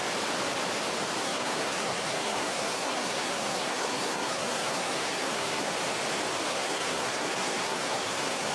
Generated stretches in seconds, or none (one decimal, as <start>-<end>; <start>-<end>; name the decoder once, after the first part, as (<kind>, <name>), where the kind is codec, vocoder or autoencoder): 1.2-5.7 (codec, SNAC); 6.5-8.5